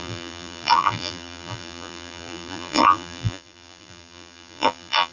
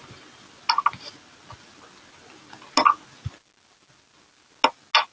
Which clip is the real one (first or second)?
second